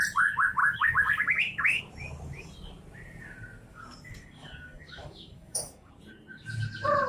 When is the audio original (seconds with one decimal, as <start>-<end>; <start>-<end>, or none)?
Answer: 0.0-0.6; 1.8-3.7; 5.9-7.1